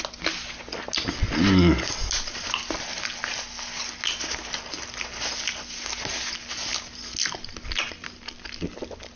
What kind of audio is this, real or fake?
real